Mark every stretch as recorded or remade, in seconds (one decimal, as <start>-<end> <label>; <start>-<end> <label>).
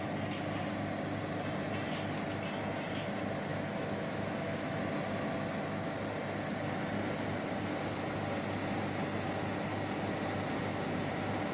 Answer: 0.0-3.5 recorded; 3.5-4.8 remade; 4.8-11.5 recorded